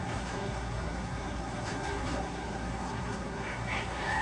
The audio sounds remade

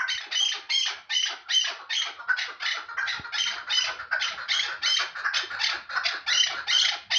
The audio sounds recorded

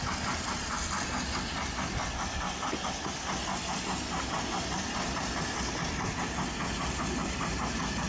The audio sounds recorded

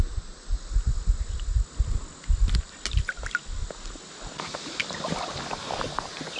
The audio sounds recorded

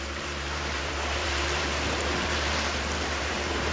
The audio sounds remade